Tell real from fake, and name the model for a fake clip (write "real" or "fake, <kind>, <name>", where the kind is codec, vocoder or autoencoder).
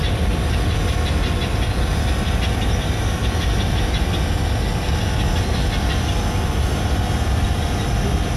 real